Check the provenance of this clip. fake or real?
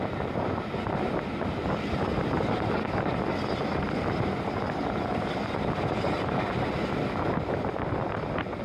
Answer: real